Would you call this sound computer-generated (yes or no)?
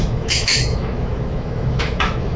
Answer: yes